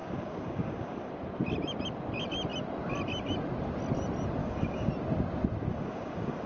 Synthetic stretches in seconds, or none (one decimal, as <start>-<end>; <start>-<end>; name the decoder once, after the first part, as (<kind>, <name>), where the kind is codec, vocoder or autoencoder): 0.0-1.1 (codec, DAC); 4.4-4.9; 5.7-6.5